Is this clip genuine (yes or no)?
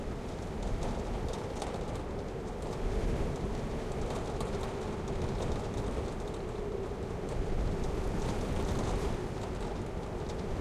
yes